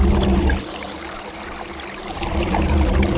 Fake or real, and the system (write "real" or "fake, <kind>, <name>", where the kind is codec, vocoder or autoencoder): real